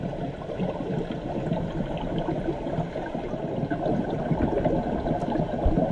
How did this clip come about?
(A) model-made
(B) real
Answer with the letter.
B